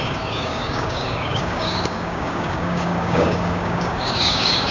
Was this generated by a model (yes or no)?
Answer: yes